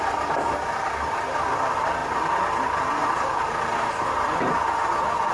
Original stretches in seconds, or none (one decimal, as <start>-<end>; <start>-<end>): 0.0-3.0; 4.4-5.3